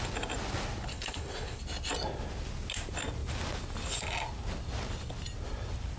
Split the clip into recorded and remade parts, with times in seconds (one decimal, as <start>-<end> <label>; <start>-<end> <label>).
0.0-0.9 recorded; 0.9-1.6 remade; 1.6-6.0 recorded

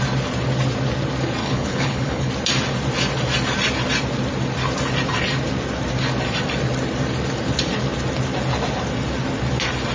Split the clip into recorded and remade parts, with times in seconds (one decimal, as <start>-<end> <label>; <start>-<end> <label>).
0.0-1.4 recorded; 1.4-2.3 remade; 2.3-9.9 recorded

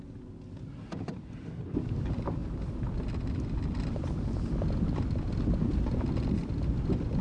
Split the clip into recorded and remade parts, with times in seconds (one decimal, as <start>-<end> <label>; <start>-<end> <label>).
0.0-7.2 recorded